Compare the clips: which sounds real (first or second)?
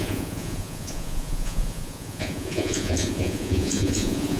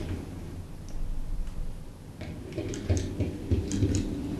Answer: second